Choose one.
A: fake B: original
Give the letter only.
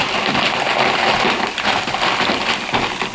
B